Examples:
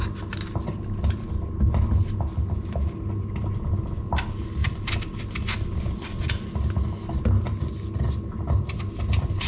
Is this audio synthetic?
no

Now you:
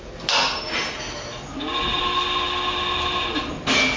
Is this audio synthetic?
no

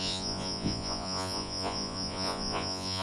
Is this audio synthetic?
yes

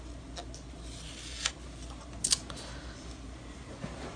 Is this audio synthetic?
no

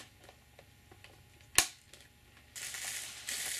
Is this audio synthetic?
no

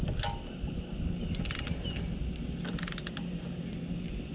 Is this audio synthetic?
no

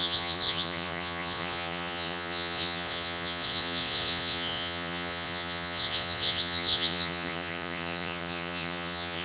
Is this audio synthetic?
yes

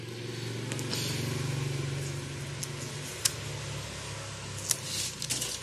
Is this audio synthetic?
no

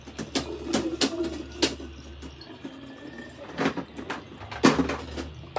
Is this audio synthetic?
no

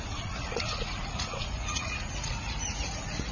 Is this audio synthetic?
yes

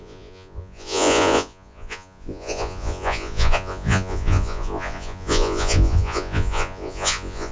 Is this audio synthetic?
yes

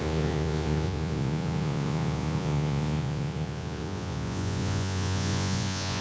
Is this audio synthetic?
yes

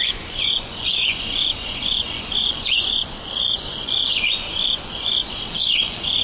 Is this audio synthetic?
yes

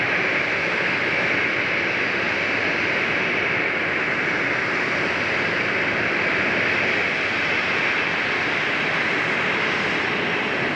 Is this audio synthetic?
no